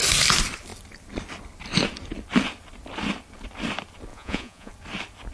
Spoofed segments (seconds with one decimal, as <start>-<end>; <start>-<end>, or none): 4.1-4.7